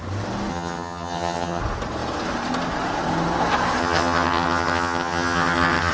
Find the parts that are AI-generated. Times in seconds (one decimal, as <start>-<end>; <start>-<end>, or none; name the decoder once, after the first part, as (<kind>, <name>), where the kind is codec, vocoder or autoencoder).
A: 0.5-1.6 (vocoder, HiFi-GAN); 3.8-5.9